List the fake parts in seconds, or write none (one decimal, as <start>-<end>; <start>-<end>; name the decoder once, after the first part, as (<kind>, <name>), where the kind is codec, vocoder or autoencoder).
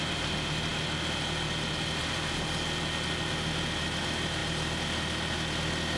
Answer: none